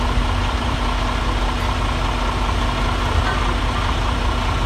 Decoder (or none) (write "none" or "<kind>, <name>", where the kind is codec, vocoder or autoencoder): none